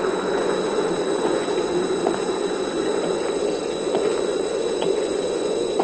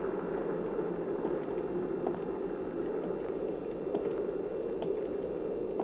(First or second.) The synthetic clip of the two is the first